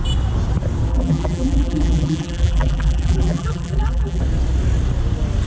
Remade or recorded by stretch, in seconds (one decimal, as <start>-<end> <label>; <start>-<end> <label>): 0.0-0.9 recorded; 0.9-4.2 remade; 4.2-5.5 recorded